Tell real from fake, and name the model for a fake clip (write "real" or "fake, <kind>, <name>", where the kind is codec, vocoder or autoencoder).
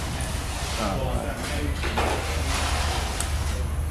real